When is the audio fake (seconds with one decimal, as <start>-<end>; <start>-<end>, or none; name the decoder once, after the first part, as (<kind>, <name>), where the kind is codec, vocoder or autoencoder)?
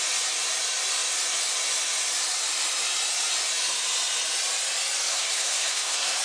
5.1-6.2 (codec, SNAC)